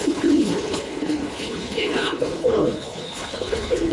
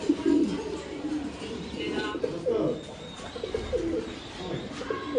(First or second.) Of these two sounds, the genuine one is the second